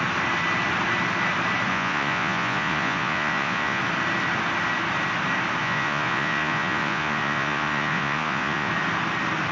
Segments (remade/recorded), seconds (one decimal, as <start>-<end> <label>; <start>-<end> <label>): 0.0-1.7 recorded; 1.7-3.8 remade; 3.8-5.6 recorded; 5.6-8.7 remade; 8.7-9.5 recorded